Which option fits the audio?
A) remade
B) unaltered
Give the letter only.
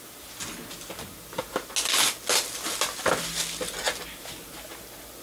B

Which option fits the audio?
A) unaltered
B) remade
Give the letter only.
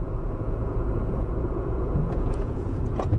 B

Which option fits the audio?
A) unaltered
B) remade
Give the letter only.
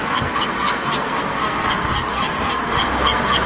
B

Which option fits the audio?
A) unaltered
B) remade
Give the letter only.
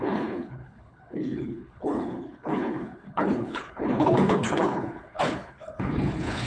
B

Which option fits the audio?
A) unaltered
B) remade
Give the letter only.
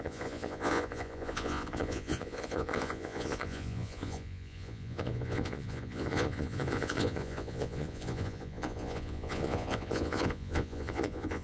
B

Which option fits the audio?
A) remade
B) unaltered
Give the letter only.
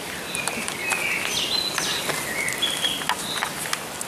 B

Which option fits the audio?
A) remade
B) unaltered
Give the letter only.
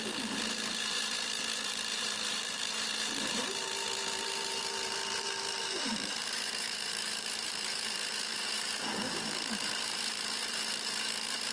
A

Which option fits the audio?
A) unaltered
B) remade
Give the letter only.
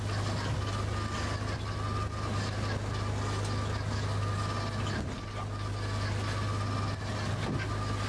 A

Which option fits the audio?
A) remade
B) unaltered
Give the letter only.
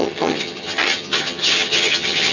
A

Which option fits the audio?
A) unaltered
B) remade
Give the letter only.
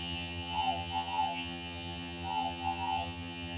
B